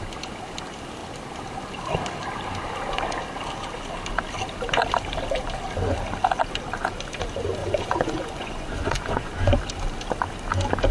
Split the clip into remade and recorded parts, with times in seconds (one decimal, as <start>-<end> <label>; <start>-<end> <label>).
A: 0.0-7.6 recorded; 7.6-9.6 remade; 9.6-10.9 recorded